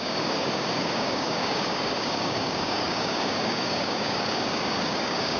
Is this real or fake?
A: fake